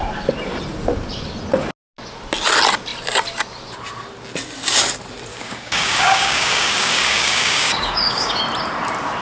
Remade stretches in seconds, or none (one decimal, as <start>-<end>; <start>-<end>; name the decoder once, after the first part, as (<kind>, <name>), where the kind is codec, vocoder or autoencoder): 5.3-8.4 (codec, DAC)